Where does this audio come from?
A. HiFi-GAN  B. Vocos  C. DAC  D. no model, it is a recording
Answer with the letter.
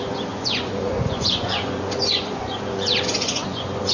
B